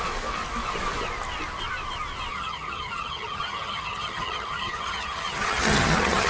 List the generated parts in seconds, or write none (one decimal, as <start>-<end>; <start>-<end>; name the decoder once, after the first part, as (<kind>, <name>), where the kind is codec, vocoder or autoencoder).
2.3-6.3 (vocoder, HiFi-GAN)